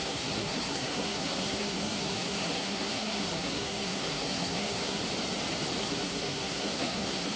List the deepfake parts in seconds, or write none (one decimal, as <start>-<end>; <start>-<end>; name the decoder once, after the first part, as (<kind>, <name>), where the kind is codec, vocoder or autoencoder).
0.0-5.0 (codec, SNAC); 5.8-7.4